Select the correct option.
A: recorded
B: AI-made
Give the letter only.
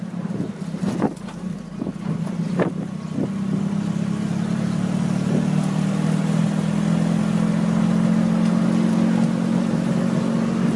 A